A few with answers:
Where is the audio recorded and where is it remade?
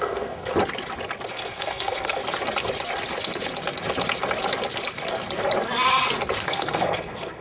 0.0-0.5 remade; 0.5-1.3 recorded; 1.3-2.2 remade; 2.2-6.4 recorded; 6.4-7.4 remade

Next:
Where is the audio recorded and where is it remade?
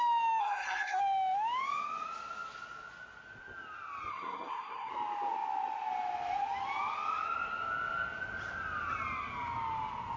0.0-0.4 recorded; 0.4-1.0 remade; 1.0-4.1 recorded; 4.1-4.9 remade; 4.9-10.2 recorded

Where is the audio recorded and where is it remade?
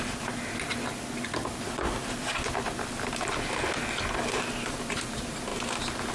0.0-6.1 recorded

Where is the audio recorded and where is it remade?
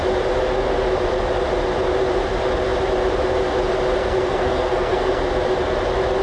0.0-4.0 recorded; 4.0-5.2 remade; 5.2-6.2 recorded